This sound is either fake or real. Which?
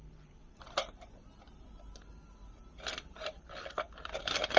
real